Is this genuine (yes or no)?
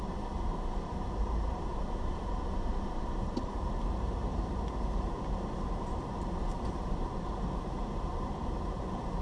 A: no